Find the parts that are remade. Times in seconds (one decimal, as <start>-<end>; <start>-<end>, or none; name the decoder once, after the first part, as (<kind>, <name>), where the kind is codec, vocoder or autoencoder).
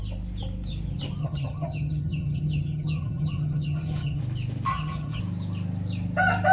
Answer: 1.2-4.2 (vocoder, HiFi-GAN); 4.7-5.2